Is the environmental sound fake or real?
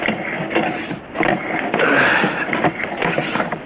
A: real